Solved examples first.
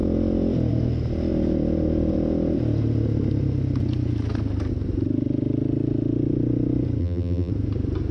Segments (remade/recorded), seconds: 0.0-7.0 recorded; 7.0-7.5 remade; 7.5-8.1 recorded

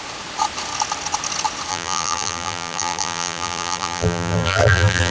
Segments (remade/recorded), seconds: 0.0-1.7 recorded; 1.7-5.1 remade

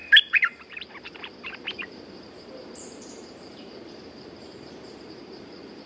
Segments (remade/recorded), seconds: 0.0-5.9 remade